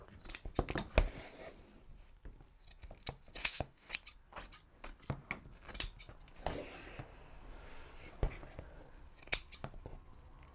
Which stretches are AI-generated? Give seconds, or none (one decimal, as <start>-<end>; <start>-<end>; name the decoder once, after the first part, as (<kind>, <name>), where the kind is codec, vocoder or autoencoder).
3.4-3.9 (autoencoder, DAC-VAE)